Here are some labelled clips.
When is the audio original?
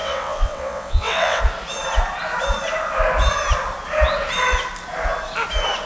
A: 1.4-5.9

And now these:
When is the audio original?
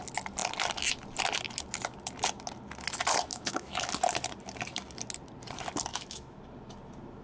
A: 0.0-3.3; 3.9-5.9; 6.4-7.2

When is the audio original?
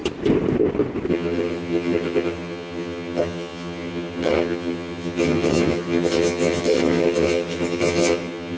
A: 0.0-1.1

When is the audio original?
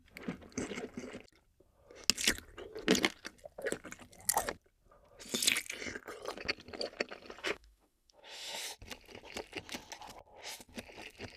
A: 0.0-7.4; 8.6-11.4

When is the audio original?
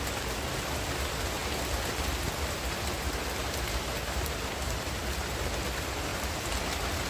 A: 0.0-7.1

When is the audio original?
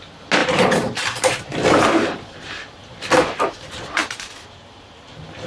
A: 0.0-0.4; 2.8-4.0